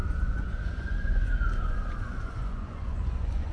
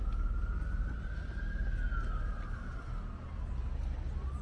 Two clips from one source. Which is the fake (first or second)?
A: first